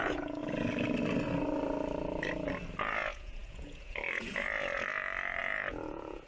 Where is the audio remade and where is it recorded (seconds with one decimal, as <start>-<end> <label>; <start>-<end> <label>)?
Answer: 0.0-0.4 remade; 0.4-2.8 recorded; 2.8-6.3 remade